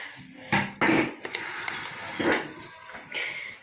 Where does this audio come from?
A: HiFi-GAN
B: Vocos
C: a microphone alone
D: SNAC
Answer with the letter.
C